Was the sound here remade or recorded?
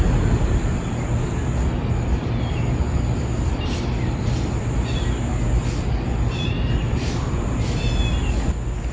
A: recorded